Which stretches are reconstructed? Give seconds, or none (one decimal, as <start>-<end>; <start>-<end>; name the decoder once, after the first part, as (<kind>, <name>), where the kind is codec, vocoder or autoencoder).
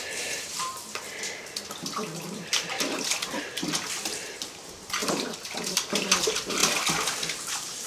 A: 0.0-0.7 (vocoder, BigVGAN v2); 4.0-6.6; 7.5-7.9